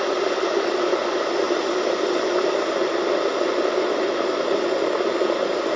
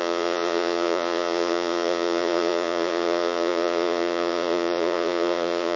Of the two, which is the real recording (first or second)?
first